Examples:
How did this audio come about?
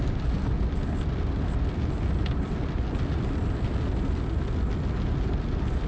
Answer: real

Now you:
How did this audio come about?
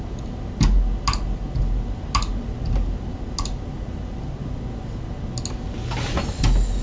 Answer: real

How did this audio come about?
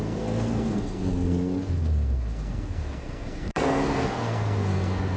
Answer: fake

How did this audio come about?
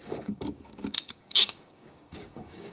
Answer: fake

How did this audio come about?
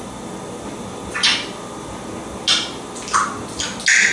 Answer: real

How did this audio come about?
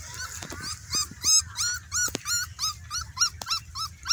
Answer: real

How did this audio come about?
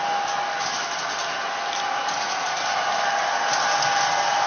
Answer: real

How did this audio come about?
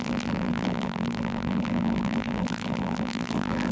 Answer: fake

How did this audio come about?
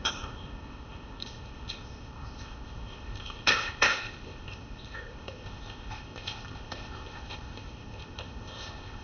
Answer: fake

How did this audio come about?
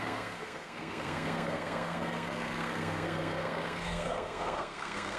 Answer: fake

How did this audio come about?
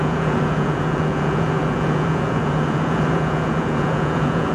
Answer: fake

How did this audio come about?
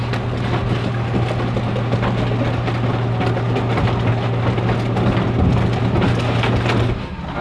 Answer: real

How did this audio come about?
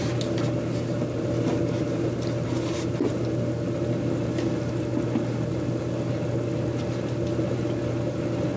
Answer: real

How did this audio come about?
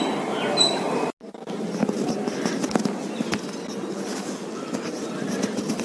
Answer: real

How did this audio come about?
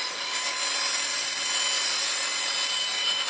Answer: real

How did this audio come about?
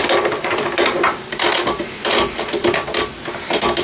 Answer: real